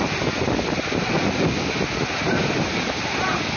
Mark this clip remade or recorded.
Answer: recorded